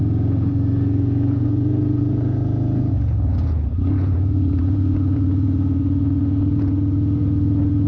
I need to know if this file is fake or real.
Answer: fake